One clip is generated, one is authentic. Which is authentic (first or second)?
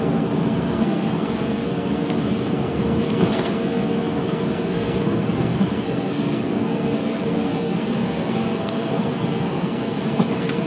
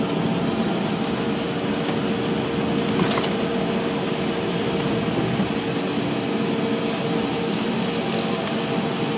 second